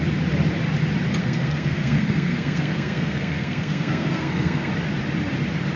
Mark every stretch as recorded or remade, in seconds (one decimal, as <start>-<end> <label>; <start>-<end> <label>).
0.0-1.2 recorded; 1.2-4.7 remade; 4.7-5.8 recorded